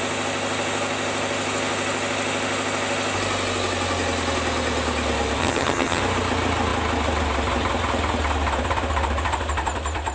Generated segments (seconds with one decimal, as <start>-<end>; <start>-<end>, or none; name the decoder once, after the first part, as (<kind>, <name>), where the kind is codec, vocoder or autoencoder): 5.4-6.0 (vocoder, HiFi-GAN)